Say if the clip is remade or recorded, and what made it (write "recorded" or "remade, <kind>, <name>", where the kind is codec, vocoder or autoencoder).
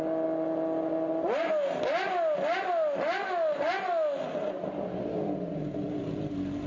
recorded